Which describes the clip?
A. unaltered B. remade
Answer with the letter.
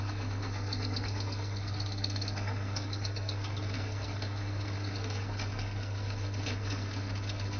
B